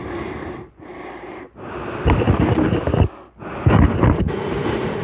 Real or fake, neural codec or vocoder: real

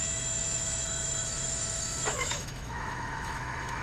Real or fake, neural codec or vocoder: fake, autoencoder, DAC-VAE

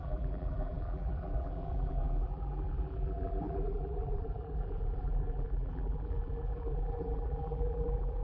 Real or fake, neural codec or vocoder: fake, vocoder, BigVGAN v2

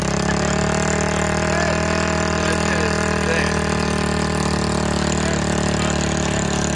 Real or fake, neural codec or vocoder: real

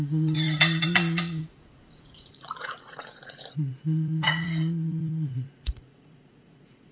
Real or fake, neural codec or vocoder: fake, vocoder, Vocos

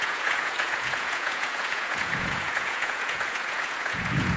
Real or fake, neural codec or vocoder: fake, vocoder, Vocos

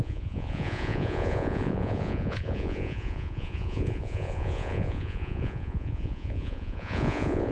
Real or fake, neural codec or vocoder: fake, vocoder, Vocos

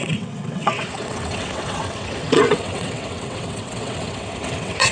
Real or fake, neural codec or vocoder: fake, vocoder, WaveNeXt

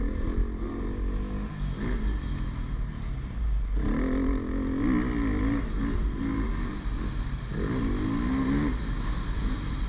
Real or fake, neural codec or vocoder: real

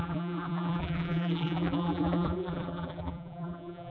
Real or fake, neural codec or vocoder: fake, vocoder, BigVGAN v2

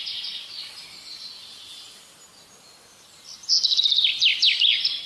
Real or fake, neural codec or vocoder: real